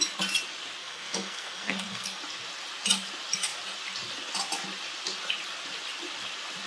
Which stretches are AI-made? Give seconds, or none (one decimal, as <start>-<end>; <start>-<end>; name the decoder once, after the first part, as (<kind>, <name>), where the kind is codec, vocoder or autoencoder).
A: 0.8-2.2 (codec, SNAC)